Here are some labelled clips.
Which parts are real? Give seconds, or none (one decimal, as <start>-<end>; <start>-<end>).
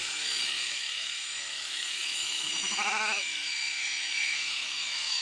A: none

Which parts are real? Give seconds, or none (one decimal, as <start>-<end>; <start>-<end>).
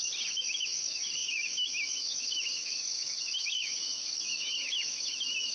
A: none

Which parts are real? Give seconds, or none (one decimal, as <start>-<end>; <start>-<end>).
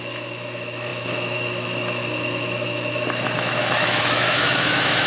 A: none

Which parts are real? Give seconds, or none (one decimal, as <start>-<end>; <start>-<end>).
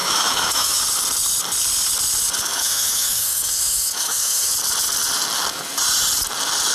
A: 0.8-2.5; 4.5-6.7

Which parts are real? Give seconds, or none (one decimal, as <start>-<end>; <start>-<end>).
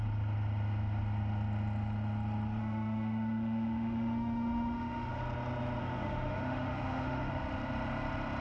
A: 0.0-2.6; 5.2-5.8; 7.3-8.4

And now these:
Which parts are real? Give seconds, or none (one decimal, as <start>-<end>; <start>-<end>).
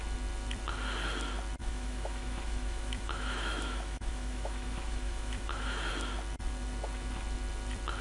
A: 0.0-1.6; 5.9-8.0